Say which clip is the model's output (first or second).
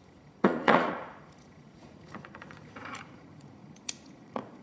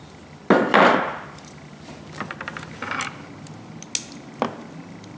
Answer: first